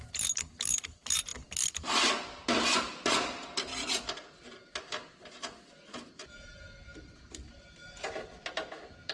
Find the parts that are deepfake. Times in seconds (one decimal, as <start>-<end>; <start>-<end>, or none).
0.0-3.7; 7.0-9.1